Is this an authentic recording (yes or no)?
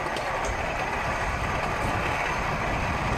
yes